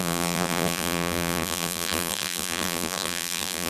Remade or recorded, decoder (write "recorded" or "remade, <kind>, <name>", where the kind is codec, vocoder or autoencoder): remade, vocoder, BigVGAN v2